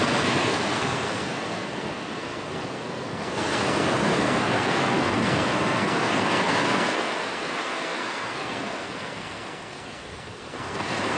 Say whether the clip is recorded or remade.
remade